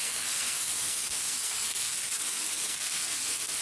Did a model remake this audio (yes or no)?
yes